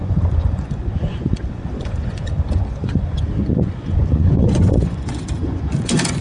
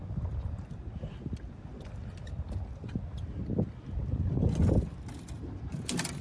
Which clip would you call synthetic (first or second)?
first